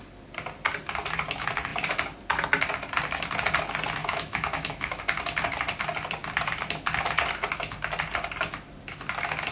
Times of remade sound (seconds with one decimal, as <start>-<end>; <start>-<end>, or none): 4.0-5.0